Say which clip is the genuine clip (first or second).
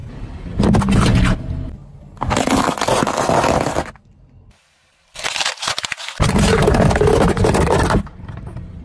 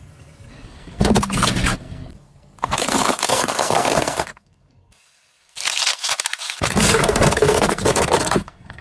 first